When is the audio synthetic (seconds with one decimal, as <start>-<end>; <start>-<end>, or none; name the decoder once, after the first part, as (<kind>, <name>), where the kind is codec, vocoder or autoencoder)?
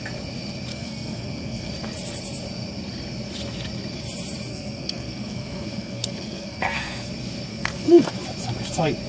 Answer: 0.7-1.7 (codec, SNAC); 4.5-7.1; 7.5-8.1